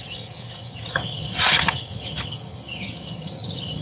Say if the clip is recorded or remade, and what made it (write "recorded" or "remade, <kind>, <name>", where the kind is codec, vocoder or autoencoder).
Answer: remade, vocoder, HiFi-GAN